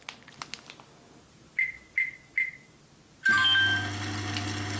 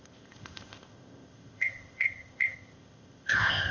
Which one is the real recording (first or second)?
first